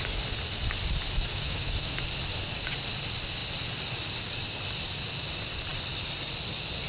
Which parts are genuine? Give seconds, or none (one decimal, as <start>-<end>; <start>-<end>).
0.0-1.3; 2.0-6.9